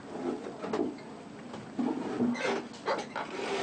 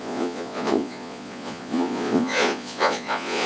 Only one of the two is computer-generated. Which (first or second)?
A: second